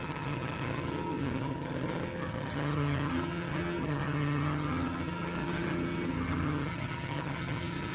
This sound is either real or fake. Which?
fake